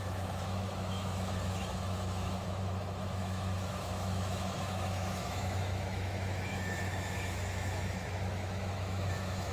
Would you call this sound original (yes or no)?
no